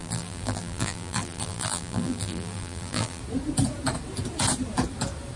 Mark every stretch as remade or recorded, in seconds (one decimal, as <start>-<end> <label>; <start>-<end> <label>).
0.0-3.2 remade; 3.2-5.4 recorded